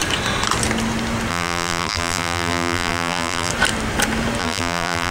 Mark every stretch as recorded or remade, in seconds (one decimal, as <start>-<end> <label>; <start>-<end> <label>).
0.0-1.3 recorded; 1.3-3.5 remade; 3.5-4.4 recorded; 4.4-5.1 remade